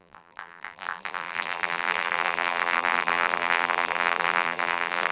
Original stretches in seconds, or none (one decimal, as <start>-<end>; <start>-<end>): none